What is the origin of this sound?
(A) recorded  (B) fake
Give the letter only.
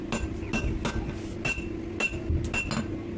A